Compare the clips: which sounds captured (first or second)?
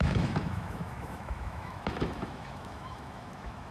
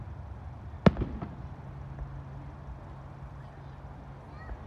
second